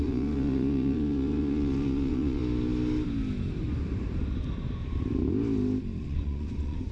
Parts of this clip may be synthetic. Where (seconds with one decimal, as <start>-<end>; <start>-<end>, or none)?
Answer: 0.0-2.4; 6.0-6.9